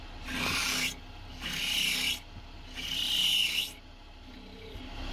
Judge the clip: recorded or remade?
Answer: recorded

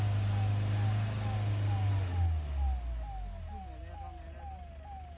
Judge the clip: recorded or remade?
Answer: recorded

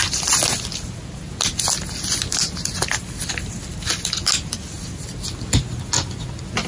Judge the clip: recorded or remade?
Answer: recorded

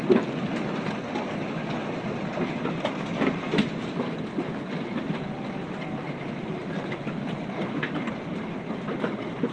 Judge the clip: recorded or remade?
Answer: recorded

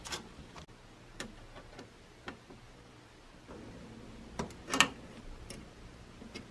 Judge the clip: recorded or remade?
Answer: recorded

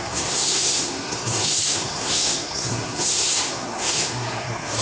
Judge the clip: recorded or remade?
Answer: remade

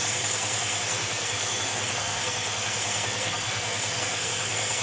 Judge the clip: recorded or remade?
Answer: remade